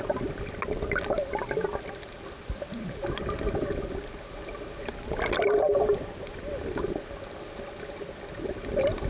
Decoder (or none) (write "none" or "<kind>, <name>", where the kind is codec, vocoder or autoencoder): none